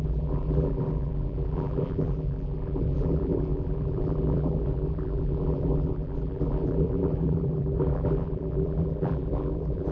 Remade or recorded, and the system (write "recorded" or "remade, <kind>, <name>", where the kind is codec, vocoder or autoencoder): remade, vocoder, BigVGAN v2